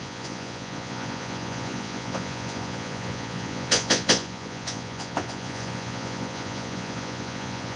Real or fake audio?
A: fake